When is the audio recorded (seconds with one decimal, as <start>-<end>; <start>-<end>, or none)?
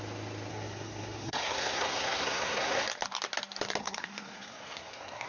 0.0-0.5; 2.8-3.8